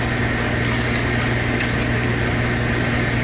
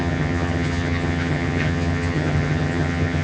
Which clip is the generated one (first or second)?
second